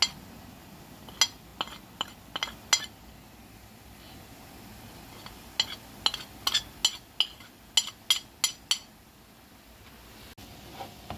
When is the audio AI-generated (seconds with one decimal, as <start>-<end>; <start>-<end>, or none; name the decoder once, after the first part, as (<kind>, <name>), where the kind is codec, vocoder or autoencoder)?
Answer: none